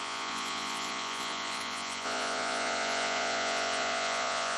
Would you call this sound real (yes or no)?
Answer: no